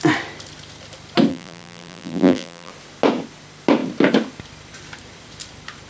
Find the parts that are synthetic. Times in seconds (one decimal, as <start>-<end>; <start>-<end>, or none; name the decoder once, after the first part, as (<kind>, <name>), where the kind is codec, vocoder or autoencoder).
1.3-2.7 (vocoder, BigVGAN v2)